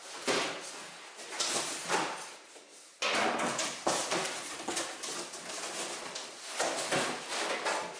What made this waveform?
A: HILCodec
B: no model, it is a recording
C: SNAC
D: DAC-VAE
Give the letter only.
B